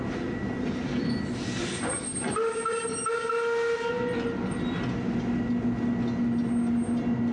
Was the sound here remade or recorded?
recorded